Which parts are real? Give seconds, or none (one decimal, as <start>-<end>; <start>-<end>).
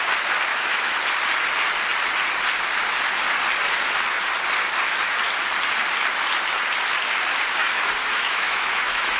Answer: 0.0-0.5; 1.0-7.6